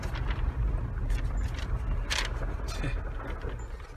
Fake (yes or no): no